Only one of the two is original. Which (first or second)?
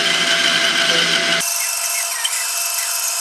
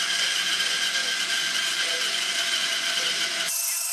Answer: first